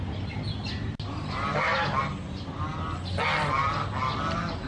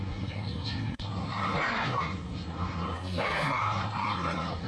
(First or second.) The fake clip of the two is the second